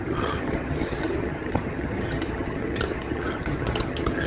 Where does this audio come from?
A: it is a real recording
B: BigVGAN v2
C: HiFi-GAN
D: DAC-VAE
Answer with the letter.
C